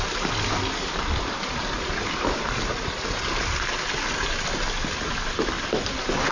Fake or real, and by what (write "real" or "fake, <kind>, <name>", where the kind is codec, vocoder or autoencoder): real